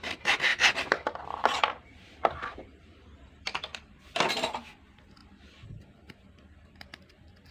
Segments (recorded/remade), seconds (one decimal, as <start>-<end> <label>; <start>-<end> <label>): 0.0-0.5 recorded; 0.5-4.3 remade; 4.3-5.2 recorded; 5.2-7.0 remade; 7.0-7.5 recorded